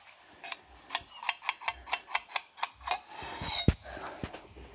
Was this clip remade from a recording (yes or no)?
no